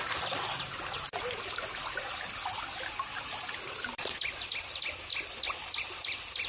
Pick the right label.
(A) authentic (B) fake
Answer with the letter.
A